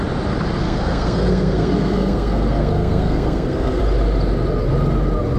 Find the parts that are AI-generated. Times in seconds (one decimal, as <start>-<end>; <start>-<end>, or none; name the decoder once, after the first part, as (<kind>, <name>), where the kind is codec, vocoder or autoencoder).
0.6-3.8 (codec, SNAC)

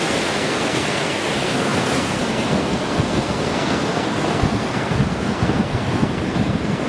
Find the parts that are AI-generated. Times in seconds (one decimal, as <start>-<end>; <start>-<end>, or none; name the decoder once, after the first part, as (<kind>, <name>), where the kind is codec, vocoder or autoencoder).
0.0-6.9 (codec, SNAC)